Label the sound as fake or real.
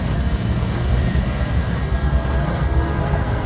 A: fake